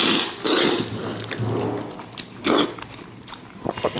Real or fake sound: real